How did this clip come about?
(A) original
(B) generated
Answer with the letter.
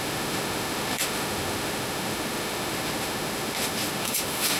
B